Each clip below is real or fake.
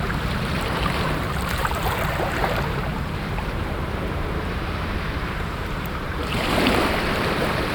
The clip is fake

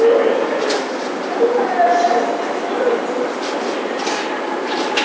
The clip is fake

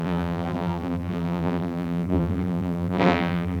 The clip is fake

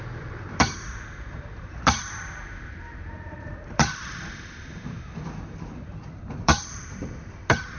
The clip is fake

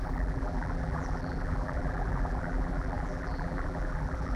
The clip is fake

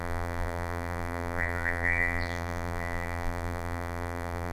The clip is fake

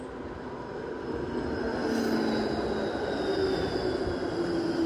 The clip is real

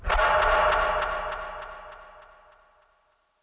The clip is real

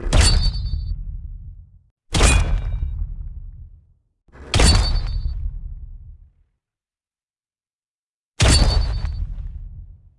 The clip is real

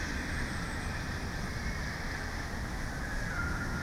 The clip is real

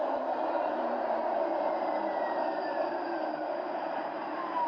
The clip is fake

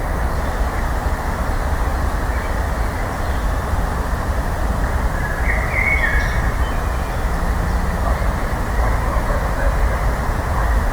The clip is real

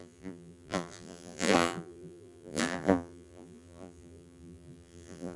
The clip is fake